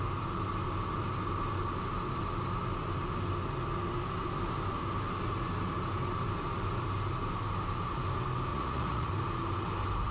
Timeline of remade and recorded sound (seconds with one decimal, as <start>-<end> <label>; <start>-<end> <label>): 0.0-8.5 recorded; 8.5-9.1 remade; 9.1-10.1 recorded